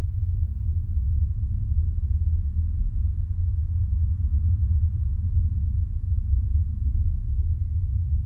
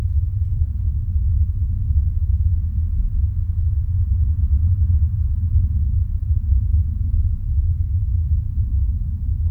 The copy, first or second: second